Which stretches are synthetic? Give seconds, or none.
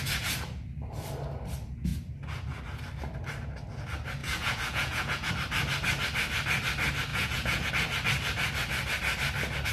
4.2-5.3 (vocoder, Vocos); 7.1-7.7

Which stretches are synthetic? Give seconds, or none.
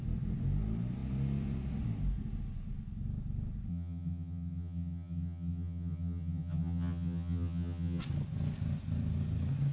3.7-8.0 (vocoder, HiFi-GAN)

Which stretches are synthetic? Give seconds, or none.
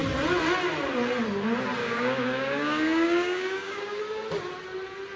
1.8-4.0 (codec, DAC)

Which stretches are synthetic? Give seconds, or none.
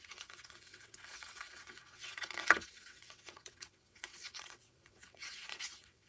0.0-6.1 (vocoder, WaveNeXt)